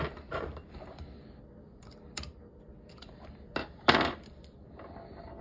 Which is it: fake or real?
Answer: real